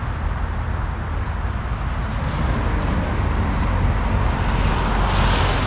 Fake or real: real